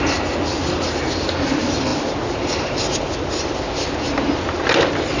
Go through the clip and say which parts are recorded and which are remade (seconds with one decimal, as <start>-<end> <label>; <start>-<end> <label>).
0.0-5.2 recorded